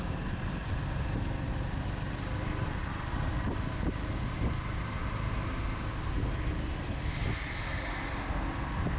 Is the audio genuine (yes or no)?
yes